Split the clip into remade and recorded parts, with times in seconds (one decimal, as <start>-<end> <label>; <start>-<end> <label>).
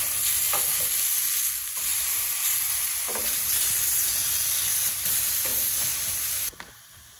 0.0-1.9 recorded; 1.9-3.6 remade; 3.6-7.2 recorded